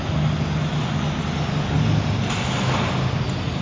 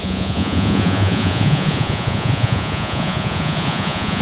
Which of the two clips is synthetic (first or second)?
second